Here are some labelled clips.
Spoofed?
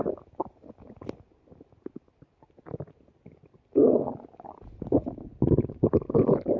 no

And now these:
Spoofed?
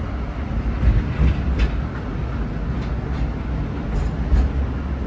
no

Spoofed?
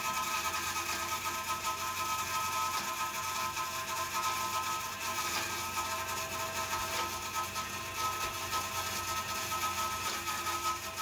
no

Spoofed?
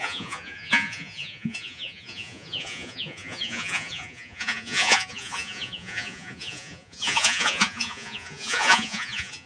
yes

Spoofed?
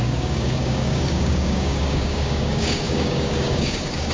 yes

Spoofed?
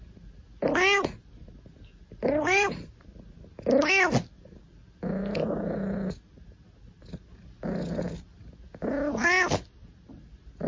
no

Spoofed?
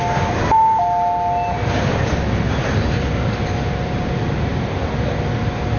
no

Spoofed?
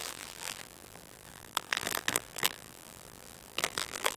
yes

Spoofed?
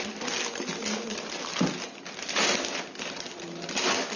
no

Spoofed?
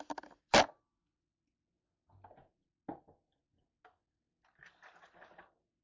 no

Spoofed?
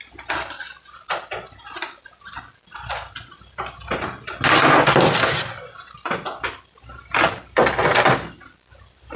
no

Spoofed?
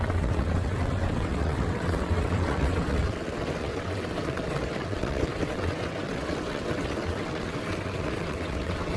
yes